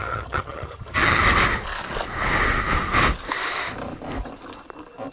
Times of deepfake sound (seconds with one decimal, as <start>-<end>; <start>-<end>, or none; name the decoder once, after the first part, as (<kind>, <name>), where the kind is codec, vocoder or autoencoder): 0.0-1.2 (vocoder, HiFi-GAN)